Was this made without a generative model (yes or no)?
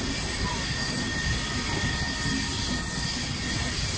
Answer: yes